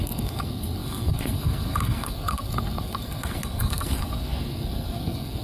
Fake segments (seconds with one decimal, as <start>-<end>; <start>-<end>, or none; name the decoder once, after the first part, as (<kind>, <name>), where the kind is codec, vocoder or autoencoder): 0.0-5.4 (codec, SNAC)